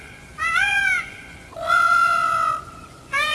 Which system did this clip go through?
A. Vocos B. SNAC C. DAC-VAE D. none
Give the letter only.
A